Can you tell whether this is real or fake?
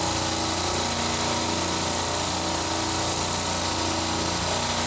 real